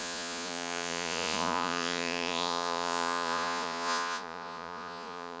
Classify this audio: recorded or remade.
remade